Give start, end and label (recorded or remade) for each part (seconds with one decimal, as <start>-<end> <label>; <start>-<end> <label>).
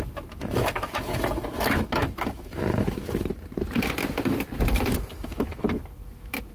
0.0-3.3 remade; 3.3-5.1 recorded; 5.1-6.5 remade